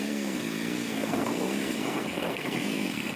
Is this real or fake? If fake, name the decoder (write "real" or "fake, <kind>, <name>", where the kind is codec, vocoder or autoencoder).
fake, codec, SNAC